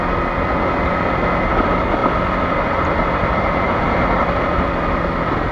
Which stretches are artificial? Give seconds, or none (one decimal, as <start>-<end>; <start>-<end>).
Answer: 2.0-2.6; 3.2-3.8